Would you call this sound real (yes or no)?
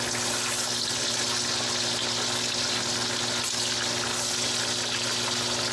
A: yes